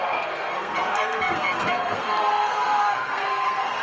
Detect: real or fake fake